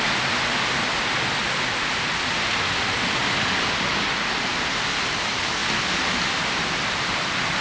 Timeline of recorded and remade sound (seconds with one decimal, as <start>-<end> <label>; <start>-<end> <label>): 0.0-7.6 recorded